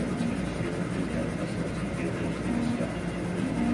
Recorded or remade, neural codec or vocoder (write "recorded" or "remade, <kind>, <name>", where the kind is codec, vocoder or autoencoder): recorded